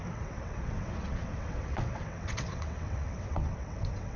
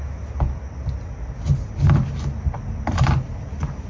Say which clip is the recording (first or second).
second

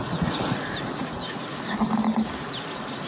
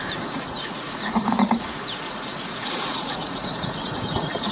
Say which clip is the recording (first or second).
first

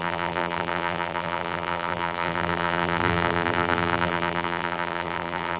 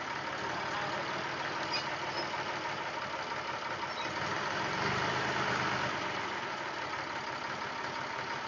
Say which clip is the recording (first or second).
second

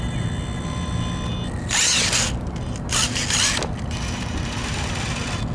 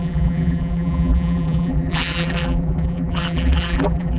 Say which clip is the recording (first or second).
first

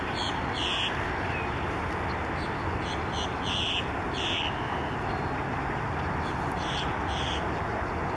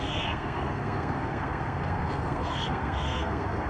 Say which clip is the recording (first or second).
first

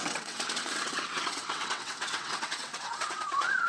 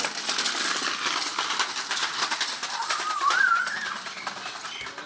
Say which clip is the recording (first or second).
second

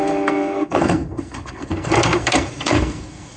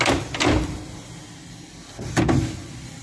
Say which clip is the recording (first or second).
second